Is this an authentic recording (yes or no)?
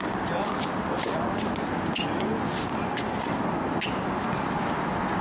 yes